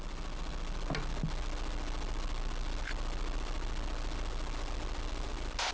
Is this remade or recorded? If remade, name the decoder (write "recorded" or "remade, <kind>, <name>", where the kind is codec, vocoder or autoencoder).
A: recorded